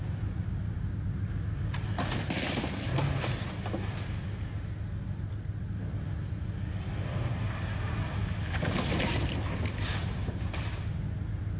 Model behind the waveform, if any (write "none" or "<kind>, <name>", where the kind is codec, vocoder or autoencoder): none